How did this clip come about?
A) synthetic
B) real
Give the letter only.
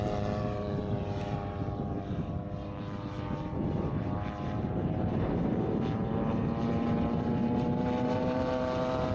A